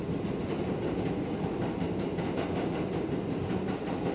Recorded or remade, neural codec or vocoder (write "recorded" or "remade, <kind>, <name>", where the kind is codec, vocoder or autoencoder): recorded